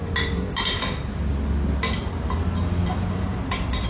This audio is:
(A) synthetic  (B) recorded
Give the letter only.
B